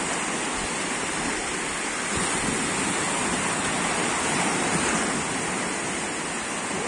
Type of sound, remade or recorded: recorded